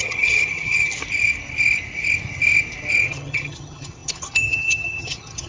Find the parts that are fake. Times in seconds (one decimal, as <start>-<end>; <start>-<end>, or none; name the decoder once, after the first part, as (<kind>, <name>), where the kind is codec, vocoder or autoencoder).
0.0-0.9 (vocoder, HiFi-GAN); 3.0-5.5